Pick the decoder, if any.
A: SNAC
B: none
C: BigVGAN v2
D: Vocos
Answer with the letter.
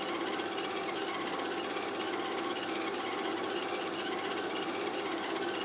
B